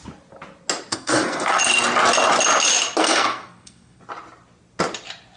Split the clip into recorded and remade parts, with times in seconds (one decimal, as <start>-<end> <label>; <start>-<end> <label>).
0.0-0.9 recorded; 0.9-1.6 remade; 1.6-3.0 recorded; 3.0-4.0 remade; 4.0-5.4 recorded